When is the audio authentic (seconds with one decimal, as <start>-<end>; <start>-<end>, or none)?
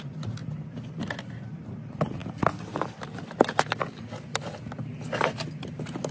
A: 0.0-6.1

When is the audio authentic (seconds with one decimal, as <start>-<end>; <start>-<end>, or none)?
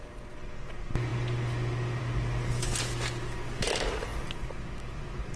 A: 0.0-5.4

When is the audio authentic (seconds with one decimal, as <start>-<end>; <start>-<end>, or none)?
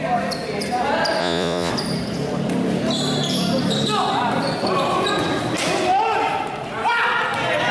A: 0.0-1.2; 1.7-7.7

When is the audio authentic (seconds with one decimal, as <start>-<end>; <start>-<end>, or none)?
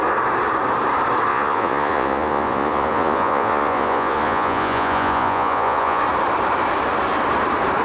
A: 0.0-1.3; 6.0-7.8